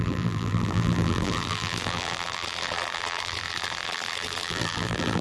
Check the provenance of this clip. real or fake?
fake